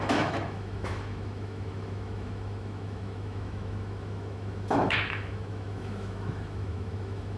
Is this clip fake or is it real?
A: fake